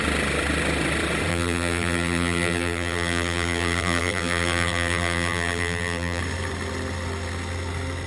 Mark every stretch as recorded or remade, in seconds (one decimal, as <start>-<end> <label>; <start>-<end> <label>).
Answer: 0.0-1.3 recorded; 1.3-6.2 remade; 6.2-8.1 recorded